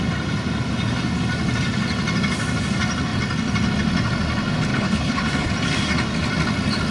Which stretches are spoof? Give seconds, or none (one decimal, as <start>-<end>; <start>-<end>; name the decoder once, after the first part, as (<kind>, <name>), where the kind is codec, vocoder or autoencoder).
4.7-5.5 (codec, HILCodec)